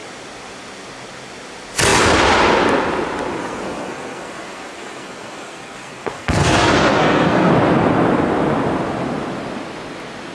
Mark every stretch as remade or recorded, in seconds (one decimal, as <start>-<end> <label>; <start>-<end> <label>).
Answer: 0.0-3.4 recorded; 3.4-7.5 remade; 7.5-10.3 recorded